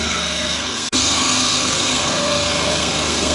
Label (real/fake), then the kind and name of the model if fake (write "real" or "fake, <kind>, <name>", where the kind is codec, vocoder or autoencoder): fake, codec, SNAC